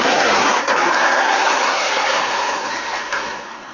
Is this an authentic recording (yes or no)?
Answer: no